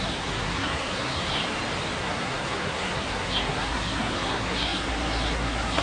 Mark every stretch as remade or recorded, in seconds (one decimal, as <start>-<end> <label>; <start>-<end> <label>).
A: 0.0-1.4 remade; 1.4-2.0 recorded; 2.0-5.8 remade